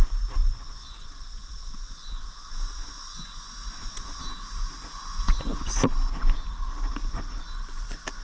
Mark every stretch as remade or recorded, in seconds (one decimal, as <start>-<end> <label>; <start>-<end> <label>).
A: 0.0-0.4 recorded; 0.4-4.2 remade; 4.2-5.0 recorded; 5.0-5.7 remade; 5.7-8.2 recorded